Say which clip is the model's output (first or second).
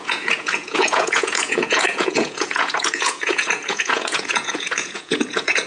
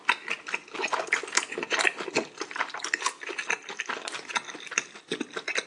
first